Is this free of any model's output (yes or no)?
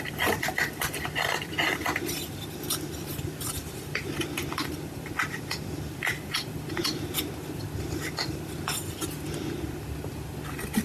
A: no